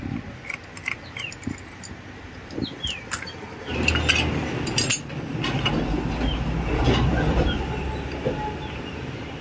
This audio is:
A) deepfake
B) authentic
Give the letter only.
B